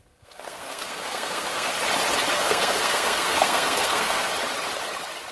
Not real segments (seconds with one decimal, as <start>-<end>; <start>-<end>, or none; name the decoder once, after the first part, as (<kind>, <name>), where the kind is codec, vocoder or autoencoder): 0.0-1.7 (codec, SNAC); 2.3-4.3